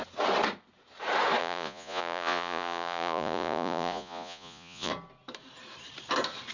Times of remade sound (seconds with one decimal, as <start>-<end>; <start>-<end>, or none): 1.4-4.9